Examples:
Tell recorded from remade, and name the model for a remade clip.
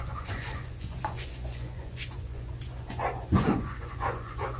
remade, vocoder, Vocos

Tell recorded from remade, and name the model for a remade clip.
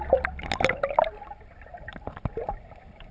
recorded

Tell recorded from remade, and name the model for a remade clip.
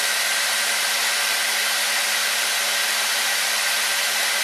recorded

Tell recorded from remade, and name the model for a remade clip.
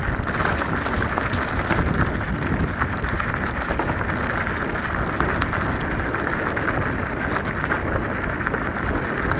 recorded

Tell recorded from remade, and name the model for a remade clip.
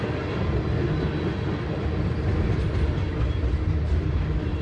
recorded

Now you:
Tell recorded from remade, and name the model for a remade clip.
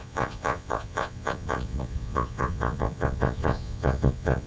remade, vocoder, Vocos